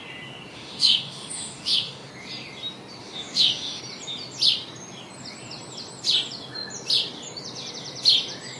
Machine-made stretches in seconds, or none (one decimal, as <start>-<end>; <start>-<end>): 0.5-2.1; 3.0-3.8